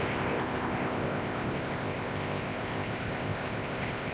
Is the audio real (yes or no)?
no